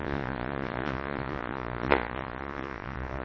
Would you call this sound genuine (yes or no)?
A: no